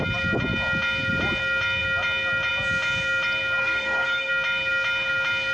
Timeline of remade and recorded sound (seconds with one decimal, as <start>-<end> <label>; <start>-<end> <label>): 0.0-3.6 recorded; 3.6-4.3 remade; 4.3-5.5 recorded